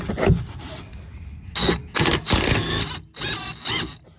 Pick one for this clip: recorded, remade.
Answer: recorded